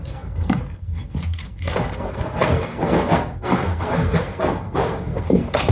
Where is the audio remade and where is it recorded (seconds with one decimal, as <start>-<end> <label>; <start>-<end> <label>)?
0.0-5.7 remade